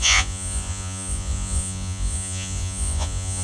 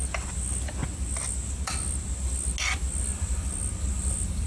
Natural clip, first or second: second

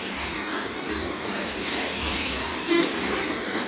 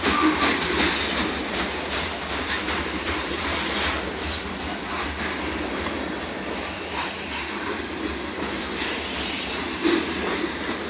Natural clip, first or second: second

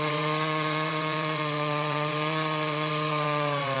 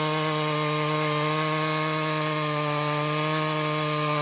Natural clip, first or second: second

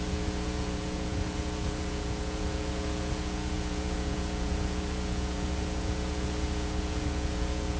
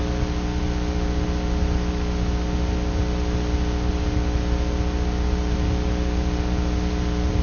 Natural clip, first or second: second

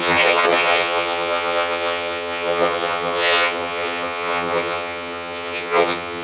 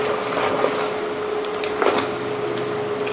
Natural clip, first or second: second